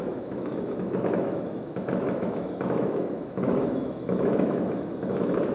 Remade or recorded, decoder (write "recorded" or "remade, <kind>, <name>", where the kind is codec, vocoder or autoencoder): remade, autoencoder, DAC-VAE